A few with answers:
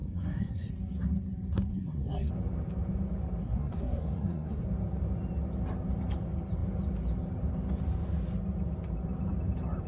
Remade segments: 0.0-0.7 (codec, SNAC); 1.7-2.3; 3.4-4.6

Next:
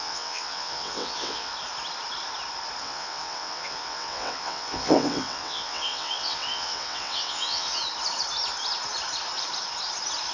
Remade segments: 0.0-1.5 (vocoder, WaveNeXt); 2.8-7.8

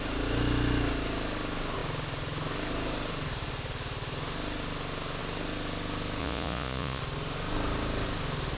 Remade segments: 6.2-7.0 (vocoder, Vocos)

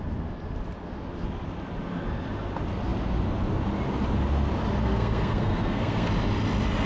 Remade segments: 4.8-6.1 (codec, SNAC)

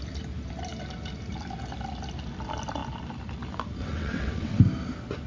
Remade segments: 3.8-4.6 (vocoder, WaveNeXt)

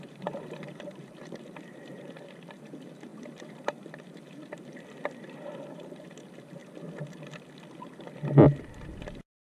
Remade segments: 0.0-6.6 (vocoder, BigVGAN v2); 8.6-9.5

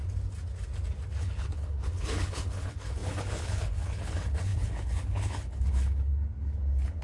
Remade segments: 1.2-7.0 (codec, HILCodec)